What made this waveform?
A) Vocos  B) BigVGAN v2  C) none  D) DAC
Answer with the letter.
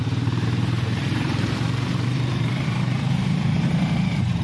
B